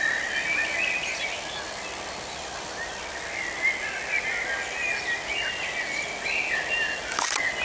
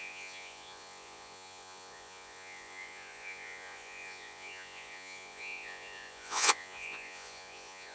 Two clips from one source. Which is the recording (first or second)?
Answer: first